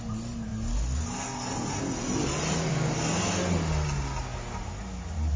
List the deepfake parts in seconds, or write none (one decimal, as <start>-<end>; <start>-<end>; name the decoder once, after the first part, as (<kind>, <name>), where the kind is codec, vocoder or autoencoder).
none